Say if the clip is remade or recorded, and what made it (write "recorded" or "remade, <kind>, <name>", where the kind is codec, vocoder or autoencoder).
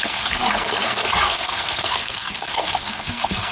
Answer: remade, codec, SNAC